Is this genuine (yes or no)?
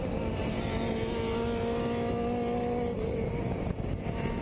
yes